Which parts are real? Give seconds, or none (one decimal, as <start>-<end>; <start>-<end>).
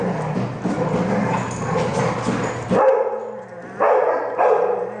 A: 0.0-5.0